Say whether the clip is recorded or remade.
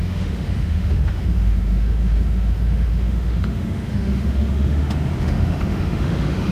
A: remade